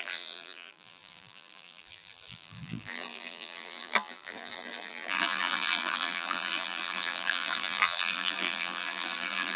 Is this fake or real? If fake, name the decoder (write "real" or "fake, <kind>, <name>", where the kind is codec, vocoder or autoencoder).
fake, vocoder, BigVGAN v2